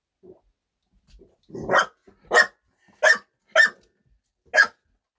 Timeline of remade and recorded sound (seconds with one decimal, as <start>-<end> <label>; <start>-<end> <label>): 0.0-5.2 recorded